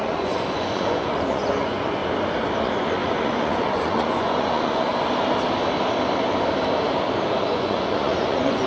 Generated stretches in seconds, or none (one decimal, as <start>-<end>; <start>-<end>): 0.0-2.0; 2.6-4.9; 7.4-8.7